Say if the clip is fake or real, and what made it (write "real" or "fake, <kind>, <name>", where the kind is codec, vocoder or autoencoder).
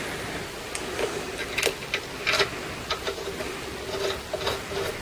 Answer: real